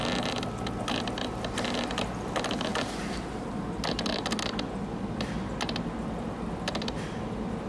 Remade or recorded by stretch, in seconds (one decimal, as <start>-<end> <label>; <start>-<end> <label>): 0.0-7.7 recorded